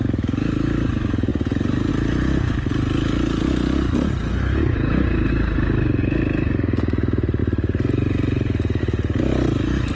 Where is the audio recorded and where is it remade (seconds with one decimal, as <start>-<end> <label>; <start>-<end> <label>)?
0.0-10.0 recorded